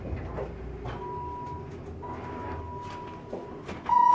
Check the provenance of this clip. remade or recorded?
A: recorded